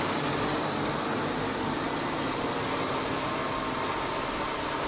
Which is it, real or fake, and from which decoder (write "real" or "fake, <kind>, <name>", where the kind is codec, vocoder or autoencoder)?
real